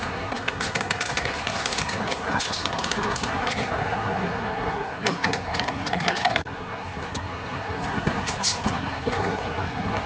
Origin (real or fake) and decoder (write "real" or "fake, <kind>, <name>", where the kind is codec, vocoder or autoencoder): fake, codec, SNAC